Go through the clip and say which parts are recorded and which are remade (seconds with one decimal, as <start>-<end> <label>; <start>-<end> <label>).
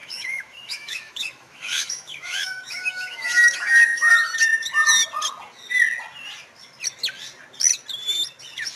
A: 0.0-4.1 remade; 4.1-8.8 recorded